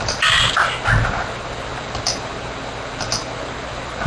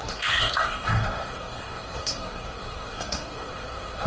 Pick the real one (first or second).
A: first